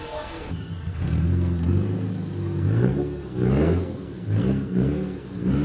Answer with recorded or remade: remade